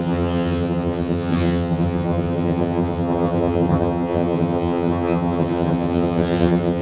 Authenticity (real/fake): fake